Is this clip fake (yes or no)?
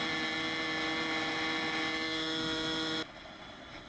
no